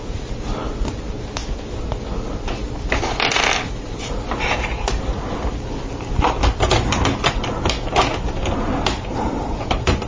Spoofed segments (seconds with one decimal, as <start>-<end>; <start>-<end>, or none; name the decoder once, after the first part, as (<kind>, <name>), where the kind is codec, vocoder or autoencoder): 9.1-10.1 (vocoder, BigVGAN v2)